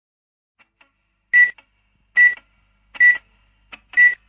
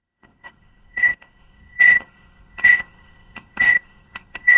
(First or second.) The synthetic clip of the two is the second